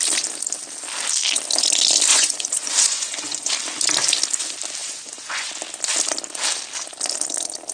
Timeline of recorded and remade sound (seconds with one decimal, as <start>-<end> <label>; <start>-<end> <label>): 0.0-2.1 recorded; 2.1-3.5 remade; 3.5-4.8 recorded; 4.8-5.5 remade; 5.5-7.7 recorded